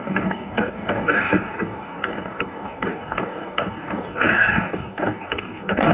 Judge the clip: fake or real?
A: fake